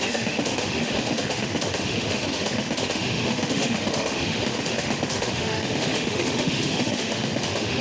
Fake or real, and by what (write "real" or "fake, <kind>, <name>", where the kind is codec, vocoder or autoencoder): fake, autoencoder, DAC-VAE